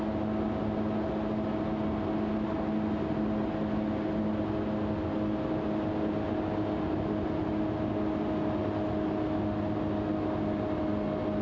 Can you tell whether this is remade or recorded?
recorded